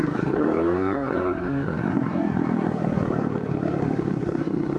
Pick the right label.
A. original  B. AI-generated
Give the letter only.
B